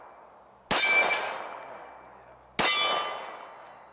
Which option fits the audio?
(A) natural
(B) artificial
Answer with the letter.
A